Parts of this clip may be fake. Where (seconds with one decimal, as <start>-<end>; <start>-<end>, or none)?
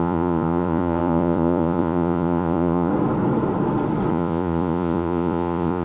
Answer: 0.0-2.9; 4.1-5.8